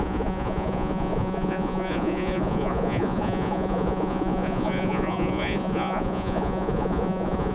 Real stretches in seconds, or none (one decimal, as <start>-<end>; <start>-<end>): none